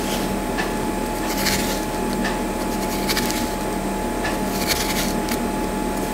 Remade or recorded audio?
recorded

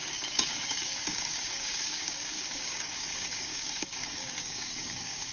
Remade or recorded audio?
remade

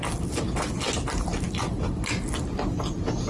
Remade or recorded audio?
recorded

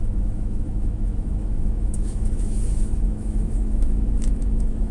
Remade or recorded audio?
remade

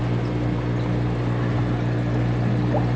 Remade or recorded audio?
recorded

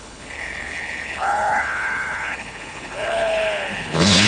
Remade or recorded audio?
remade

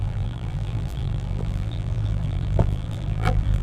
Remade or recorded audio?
remade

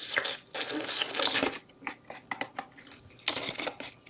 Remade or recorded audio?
recorded